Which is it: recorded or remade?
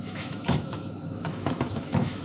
remade